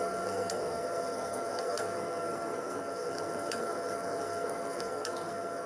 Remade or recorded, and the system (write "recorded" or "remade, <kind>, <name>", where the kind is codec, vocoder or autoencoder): remade, codec, SNAC